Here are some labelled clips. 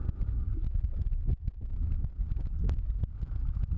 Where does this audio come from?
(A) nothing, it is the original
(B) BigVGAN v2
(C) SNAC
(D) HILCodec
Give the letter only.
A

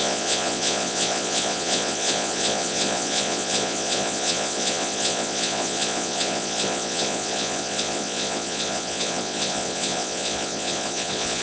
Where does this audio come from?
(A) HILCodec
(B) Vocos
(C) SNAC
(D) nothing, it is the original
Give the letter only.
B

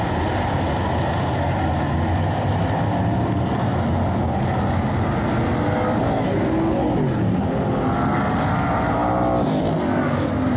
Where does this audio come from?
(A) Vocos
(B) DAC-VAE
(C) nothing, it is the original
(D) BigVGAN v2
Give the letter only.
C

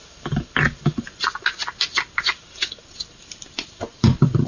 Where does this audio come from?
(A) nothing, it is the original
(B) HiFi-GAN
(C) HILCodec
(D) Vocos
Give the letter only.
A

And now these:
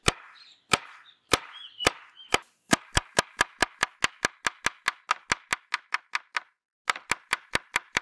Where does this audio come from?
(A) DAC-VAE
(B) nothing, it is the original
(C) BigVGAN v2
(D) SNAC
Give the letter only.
B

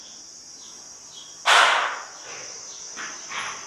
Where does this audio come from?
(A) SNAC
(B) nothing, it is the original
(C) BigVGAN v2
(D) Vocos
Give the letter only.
C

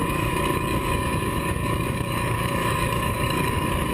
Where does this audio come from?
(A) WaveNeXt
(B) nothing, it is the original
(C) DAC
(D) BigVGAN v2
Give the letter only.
C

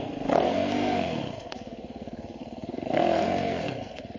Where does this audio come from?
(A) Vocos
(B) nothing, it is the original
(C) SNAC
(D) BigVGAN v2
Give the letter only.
C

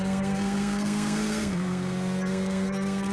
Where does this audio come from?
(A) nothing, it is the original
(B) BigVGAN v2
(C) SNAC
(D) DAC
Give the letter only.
C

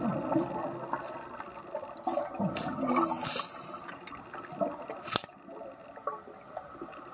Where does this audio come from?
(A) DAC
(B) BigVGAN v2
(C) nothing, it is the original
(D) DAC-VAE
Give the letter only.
C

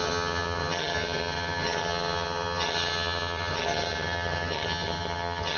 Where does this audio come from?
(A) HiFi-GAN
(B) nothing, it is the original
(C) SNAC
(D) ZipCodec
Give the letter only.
A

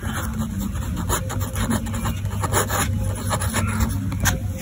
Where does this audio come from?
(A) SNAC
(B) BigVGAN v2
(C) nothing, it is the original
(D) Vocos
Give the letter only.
C